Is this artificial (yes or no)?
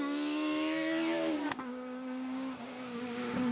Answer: yes